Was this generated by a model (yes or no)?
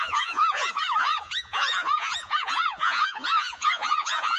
yes